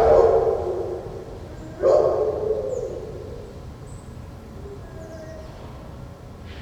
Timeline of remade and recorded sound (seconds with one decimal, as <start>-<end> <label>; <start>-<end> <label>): 0.0-4.8 recorded; 4.8-5.4 remade; 5.4-6.6 recorded

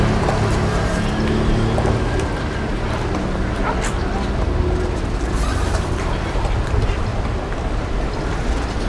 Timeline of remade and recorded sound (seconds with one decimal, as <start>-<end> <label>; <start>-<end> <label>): 0.0-7.1 recorded; 7.1-8.3 remade; 8.3-8.9 recorded

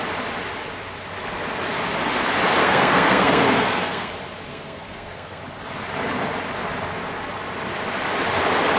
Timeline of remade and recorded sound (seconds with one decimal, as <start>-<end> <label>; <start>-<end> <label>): 0.0-2.6 recorded; 2.6-4.1 remade; 4.1-4.5 recorded; 4.5-5.4 remade; 5.4-8.8 recorded